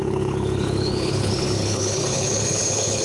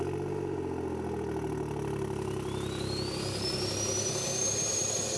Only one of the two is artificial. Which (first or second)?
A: first